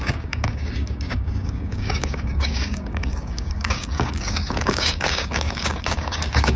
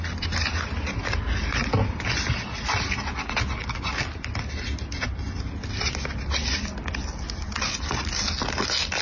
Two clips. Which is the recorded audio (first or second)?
second